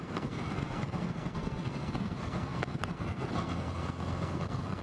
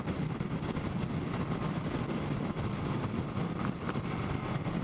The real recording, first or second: second